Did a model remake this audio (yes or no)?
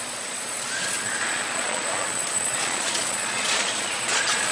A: yes